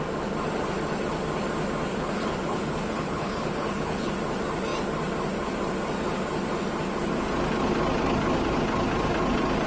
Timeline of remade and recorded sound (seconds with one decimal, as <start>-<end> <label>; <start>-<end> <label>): 0.0-1.9 recorded; 1.9-4.1 remade; 4.1-9.7 recorded

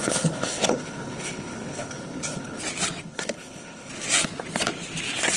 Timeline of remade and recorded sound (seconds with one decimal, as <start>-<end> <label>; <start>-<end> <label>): 0.0-2.6 remade; 2.6-3.0 recorded; 3.0-3.9 remade; 3.9-5.4 recorded

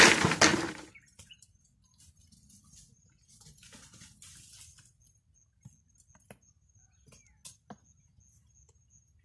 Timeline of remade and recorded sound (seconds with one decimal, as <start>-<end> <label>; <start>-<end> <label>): 0.0-0.5 recorded; 0.5-1.6 remade; 1.6-9.2 recorded

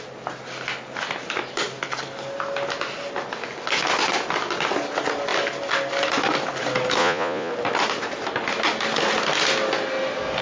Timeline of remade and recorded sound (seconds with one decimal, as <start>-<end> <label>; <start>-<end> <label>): 0.0-7.0 recorded; 7.0-7.5 remade; 7.5-10.4 recorded